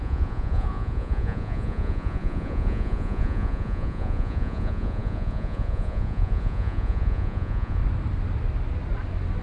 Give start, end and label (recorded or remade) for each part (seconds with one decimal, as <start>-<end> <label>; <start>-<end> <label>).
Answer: 0.0-7.8 remade; 7.8-9.4 recorded

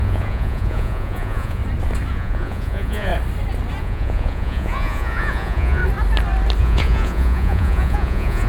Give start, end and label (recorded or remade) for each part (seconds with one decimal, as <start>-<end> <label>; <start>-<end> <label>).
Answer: 0.0-1.6 remade; 1.6-2.1 recorded; 2.1-3.1 remade; 3.1-3.8 recorded; 3.8-5.8 remade; 5.8-6.6 recorded; 6.6-8.5 remade

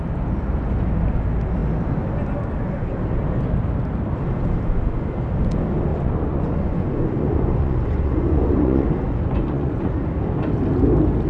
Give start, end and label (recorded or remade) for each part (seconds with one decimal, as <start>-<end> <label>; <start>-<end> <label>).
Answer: 0.0-5.9 recorded; 5.9-9.9 remade; 9.9-11.3 recorded

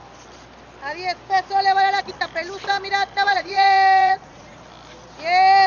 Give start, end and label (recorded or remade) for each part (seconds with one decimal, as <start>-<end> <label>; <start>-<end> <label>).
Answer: 0.0-3.3 recorded; 3.3-4.6 remade; 4.6-5.7 recorded